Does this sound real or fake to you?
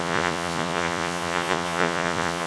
fake